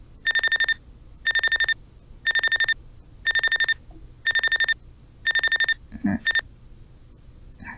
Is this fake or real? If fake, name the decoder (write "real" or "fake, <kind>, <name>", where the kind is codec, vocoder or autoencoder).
real